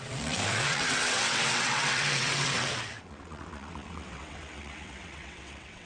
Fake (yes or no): yes